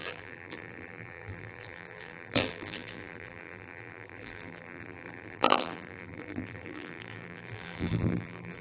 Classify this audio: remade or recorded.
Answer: remade